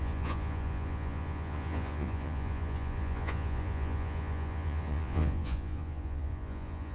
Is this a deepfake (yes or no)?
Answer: yes